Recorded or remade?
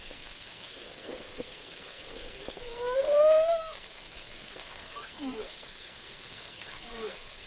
remade